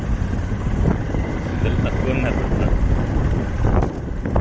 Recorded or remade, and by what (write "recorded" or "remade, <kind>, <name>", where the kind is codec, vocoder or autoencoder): recorded